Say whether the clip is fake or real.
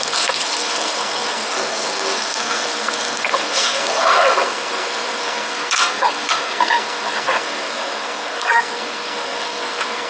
fake